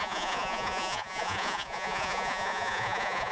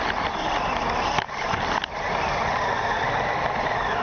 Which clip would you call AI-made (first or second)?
first